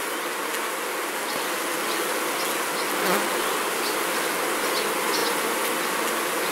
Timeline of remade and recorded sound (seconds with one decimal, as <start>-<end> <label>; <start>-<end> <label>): 0.0-5.2 recorded; 5.2-5.8 remade; 5.8-6.5 recorded